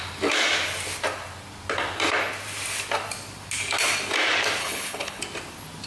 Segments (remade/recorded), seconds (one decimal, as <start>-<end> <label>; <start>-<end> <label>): 0.0-4.6 recorded; 4.6-5.2 remade; 5.2-5.9 recorded